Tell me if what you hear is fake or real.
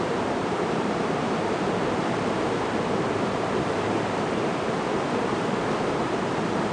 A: fake